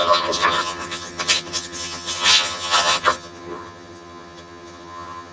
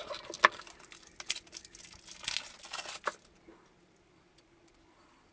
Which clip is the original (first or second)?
second